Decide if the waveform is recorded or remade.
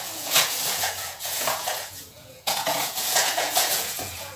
remade